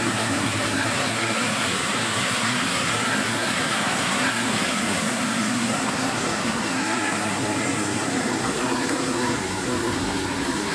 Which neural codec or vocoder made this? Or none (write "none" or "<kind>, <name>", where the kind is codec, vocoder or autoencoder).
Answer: codec, SNAC